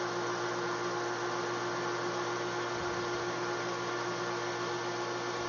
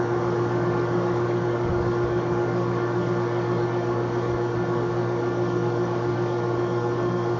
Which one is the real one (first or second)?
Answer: first